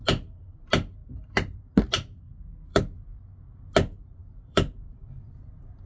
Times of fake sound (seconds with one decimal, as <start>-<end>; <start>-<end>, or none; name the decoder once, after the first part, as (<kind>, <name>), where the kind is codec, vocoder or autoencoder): 1.0-1.6 (vocoder, BigVGAN v2); 2.7-3.2; 4.2-5.9